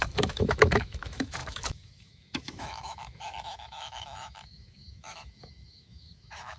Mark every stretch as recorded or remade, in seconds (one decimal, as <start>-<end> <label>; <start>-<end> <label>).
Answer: 0.0-6.6 remade